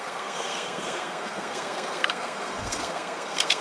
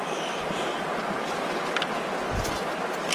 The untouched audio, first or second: second